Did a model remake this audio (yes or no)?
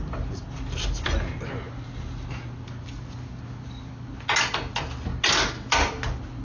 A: no